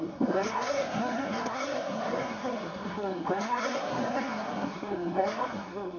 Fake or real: fake